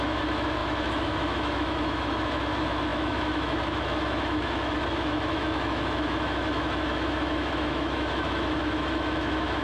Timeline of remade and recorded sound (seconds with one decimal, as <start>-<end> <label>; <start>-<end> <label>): 0.0-9.6 remade